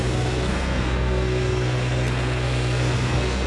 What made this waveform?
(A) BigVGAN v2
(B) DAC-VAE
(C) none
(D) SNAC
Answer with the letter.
D